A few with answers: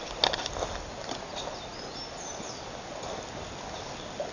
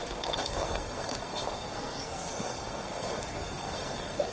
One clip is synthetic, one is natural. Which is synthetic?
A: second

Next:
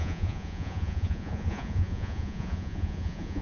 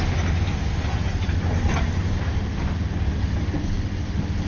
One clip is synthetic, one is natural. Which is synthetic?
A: first